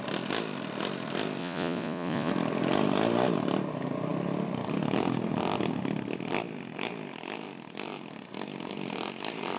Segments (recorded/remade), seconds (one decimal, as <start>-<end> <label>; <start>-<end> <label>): 0.0-1.4 recorded; 1.4-2.3 remade; 2.3-9.6 recorded